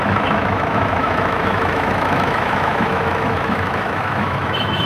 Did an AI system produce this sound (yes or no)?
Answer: yes